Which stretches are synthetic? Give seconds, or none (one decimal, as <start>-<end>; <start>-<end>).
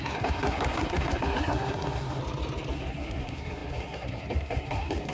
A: 0.0-2.2; 2.7-5.1